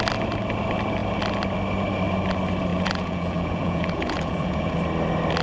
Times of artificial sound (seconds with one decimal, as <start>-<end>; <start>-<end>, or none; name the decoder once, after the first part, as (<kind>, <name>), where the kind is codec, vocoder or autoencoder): 2.7-4.8 (vocoder, Vocos)